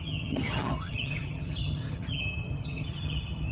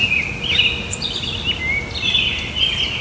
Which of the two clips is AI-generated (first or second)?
first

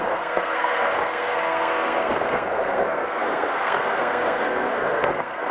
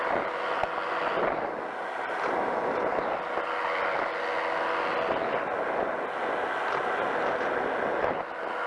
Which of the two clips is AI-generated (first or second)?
first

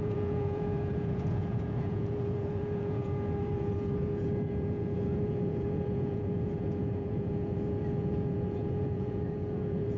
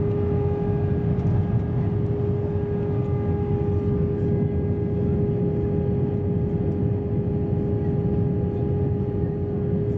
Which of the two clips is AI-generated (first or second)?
first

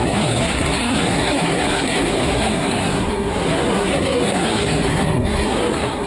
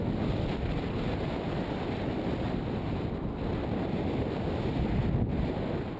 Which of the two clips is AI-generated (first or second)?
first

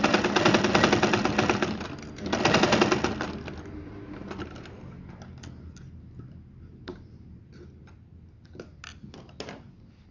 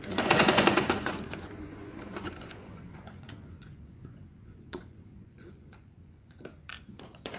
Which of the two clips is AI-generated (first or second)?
second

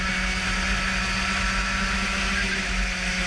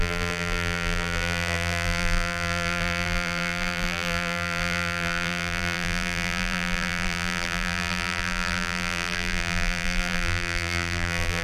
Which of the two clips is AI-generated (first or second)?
second